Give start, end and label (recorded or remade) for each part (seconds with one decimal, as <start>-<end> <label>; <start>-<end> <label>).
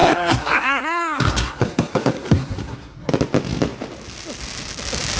0.0-3.1 remade; 3.1-5.2 recorded